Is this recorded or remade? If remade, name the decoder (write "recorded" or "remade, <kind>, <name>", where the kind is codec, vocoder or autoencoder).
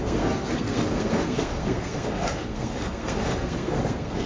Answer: remade, codec, SNAC